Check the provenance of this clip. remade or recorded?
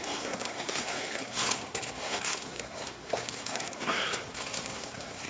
remade